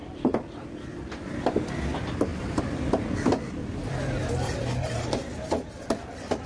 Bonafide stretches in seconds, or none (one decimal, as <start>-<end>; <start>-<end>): 1.7-2.3; 5.1-6.5